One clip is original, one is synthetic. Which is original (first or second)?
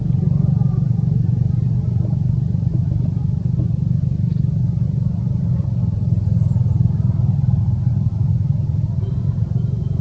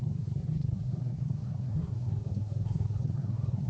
first